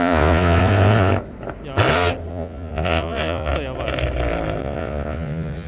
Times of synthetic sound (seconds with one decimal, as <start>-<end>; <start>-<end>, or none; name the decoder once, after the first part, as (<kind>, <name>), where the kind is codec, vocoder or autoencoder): 0.0-1.1 (vocoder, Vocos); 2.3-3.5; 4.6-5.7